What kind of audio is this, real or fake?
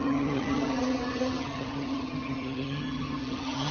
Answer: fake